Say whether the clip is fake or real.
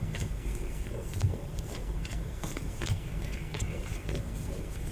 fake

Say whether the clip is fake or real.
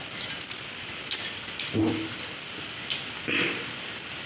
real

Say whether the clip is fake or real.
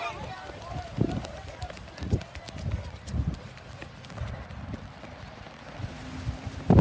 real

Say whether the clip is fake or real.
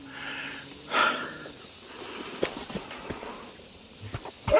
real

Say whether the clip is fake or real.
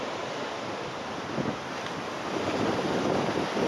real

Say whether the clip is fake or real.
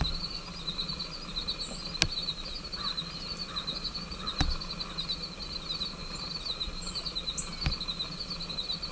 real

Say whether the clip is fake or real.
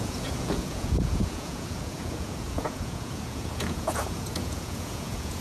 fake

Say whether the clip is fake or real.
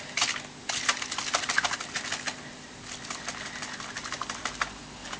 real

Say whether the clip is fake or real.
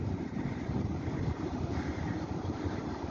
fake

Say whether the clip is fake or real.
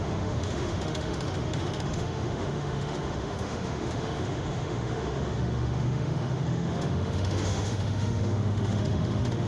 fake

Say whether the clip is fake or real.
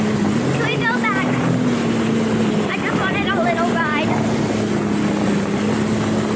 real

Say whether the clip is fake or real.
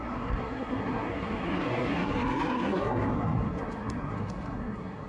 fake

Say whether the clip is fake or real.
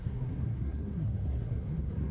fake